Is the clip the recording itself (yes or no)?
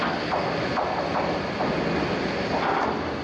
yes